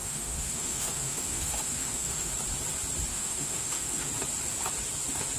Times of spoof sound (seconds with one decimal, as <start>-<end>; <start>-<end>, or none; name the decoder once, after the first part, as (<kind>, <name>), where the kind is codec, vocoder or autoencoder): 0.0-2.3 (autoencoder, DAC-VAE); 3.1-4.1